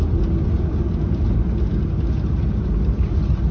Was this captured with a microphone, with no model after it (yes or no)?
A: yes